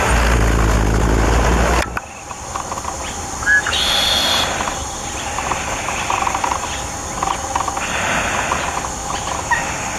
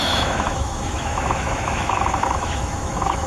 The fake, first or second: second